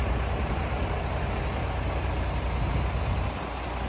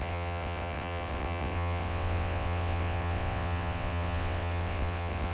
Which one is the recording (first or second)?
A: first